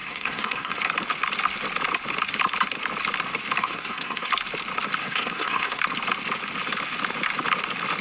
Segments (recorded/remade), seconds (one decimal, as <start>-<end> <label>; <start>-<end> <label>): 0.0-0.8 remade; 0.8-3.6 recorded; 3.6-4.3 remade; 4.3-5.0 recorded; 5.0-5.8 remade; 5.8-8.0 recorded